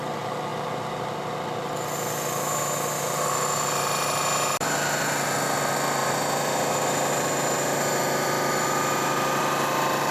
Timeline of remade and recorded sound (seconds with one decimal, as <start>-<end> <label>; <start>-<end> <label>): 0.0-10.1 recorded